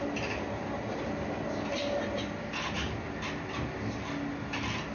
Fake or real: real